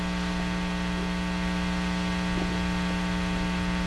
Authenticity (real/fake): real